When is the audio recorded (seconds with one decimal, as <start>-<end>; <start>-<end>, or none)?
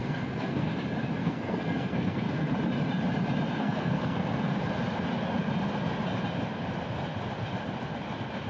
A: 0.7-1.2; 2.5-3.5; 4.5-8.5